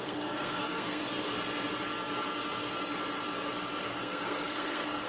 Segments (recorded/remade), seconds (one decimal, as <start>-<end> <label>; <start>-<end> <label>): 0.0-1.0 remade; 1.0-3.8 recorded; 3.8-5.1 remade